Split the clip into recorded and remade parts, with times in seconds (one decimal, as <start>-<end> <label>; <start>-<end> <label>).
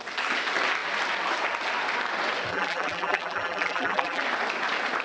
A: 0.0-2.5 recorded; 2.5-4.2 remade; 4.2-5.0 recorded